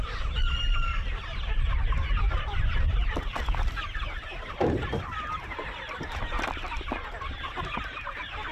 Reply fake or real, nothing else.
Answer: fake